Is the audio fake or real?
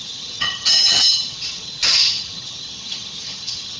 fake